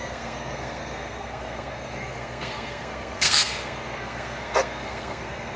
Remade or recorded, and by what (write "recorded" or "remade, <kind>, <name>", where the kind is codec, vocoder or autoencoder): remade, codec, SNAC